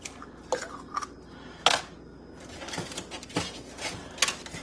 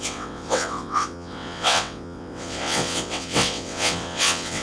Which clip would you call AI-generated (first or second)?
second